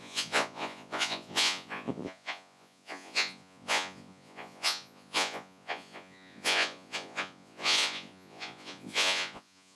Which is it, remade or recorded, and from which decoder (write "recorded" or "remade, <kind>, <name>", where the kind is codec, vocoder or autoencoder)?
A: remade, vocoder, Vocos